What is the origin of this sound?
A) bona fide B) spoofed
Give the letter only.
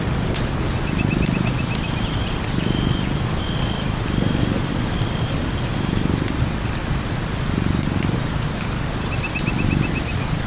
A